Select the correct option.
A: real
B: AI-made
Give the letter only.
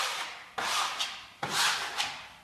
B